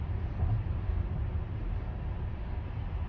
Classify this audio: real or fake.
real